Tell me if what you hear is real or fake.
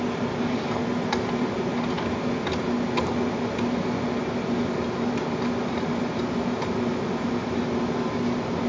real